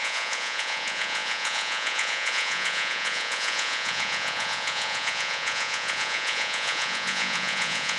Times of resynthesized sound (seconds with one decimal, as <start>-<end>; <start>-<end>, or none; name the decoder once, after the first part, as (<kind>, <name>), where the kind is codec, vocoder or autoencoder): 0.0-8.0 (vocoder, Vocos)